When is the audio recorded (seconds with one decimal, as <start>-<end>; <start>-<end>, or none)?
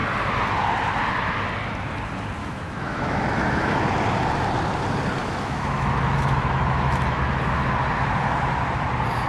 0.0-2.4; 3.8-5.2; 7.4-9.3